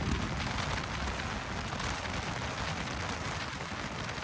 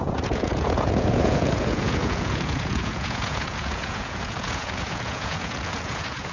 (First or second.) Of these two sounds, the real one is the first